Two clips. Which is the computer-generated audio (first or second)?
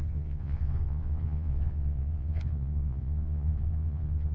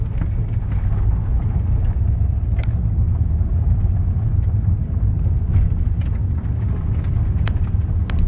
first